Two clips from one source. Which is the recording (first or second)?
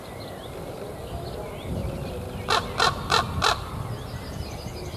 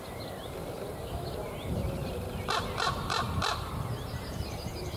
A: first